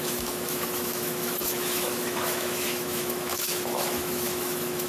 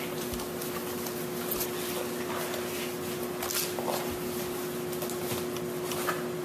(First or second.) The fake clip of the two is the first